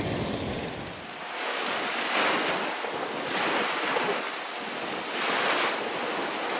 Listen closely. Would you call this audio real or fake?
real